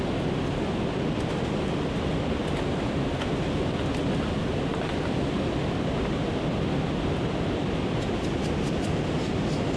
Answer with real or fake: real